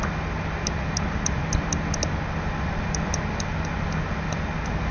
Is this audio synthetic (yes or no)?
no